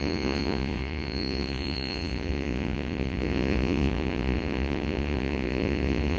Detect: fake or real fake